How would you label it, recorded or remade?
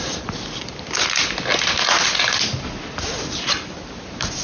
recorded